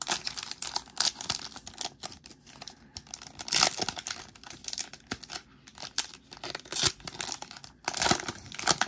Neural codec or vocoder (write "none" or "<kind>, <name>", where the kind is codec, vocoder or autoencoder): none